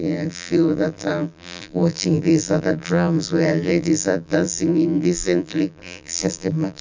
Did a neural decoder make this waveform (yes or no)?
yes